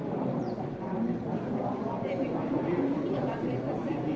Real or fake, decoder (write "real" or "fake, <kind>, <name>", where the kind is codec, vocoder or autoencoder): fake, vocoder, BigVGAN v2